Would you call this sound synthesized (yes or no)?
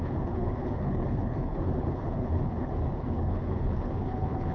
yes